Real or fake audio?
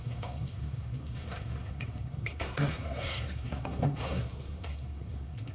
fake